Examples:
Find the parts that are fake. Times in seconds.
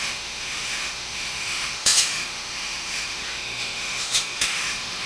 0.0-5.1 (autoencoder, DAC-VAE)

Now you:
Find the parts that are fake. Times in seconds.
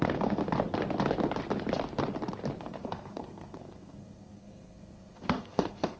0.0-0.4 (codec, SNAC); 2.6-6.0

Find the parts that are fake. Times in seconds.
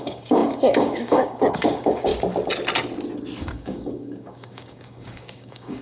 0.0-2.1 (codec, DAC); 3.4-5.8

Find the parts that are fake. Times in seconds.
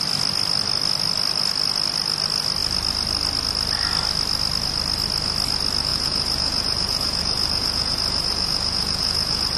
5.9-9.6 (vocoder, Vocos)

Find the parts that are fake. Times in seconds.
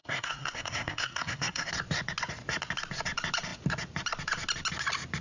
0.0-1.7 (codec, SNAC)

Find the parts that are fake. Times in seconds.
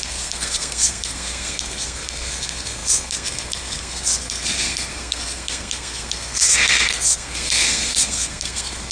0.0-8.9 (codec, SNAC)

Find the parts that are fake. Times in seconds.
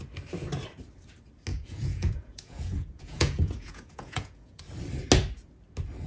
1.5-4.6 (vocoder, Vocos)